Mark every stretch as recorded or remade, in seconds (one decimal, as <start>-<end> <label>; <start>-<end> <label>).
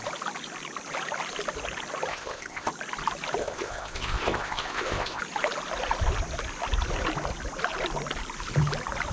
0.0-2.1 recorded; 2.1-2.7 remade; 2.7-3.4 recorded; 3.4-5.2 remade; 5.2-9.1 recorded